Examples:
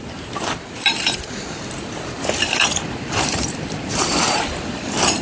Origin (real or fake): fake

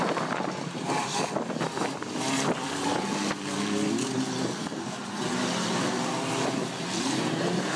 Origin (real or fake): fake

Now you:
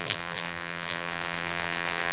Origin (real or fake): fake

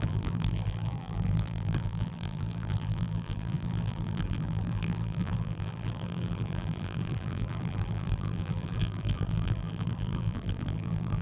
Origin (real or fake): fake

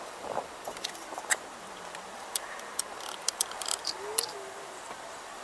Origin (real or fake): fake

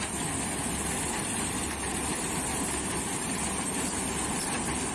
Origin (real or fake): real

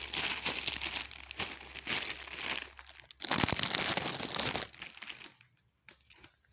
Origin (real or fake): real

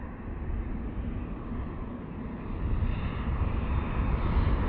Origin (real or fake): real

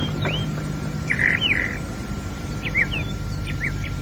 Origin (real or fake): fake